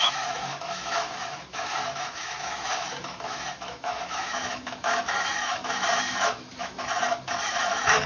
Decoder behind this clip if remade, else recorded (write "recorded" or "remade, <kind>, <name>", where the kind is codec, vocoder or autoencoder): remade, autoencoder, DAC-VAE